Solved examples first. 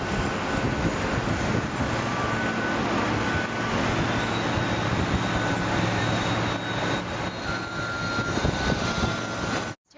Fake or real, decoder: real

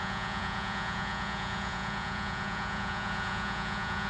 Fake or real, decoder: fake, vocoder, Vocos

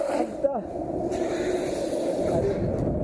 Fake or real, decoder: fake, vocoder, BigVGAN v2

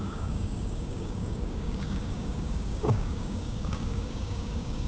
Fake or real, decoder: fake, codec, DAC